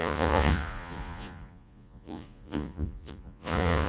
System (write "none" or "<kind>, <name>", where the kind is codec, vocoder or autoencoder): vocoder, Vocos